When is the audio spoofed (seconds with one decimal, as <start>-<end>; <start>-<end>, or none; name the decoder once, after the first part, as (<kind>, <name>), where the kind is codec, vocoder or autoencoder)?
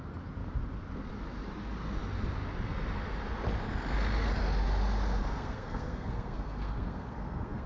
5.2-7.7 (codec, SNAC)